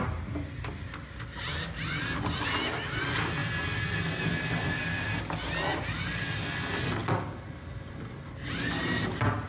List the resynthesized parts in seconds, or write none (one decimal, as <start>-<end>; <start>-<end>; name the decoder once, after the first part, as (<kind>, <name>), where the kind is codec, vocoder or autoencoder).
none